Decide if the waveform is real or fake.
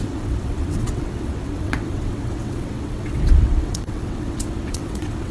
fake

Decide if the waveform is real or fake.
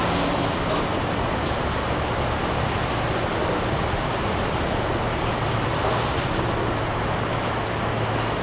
real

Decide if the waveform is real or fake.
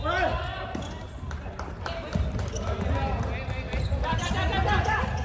real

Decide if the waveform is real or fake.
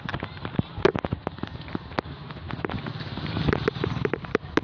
real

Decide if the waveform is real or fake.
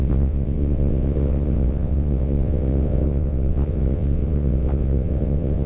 fake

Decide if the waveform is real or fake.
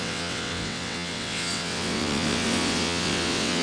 fake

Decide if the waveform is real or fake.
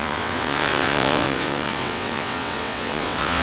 fake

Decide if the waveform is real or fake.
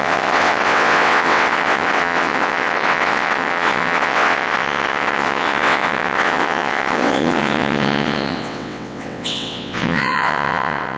fake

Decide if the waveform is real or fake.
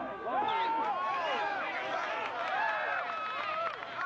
real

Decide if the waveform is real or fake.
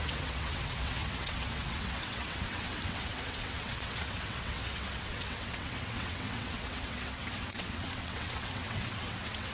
fake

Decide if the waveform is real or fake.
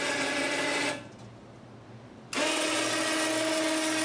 real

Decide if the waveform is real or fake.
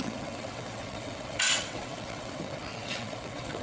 fake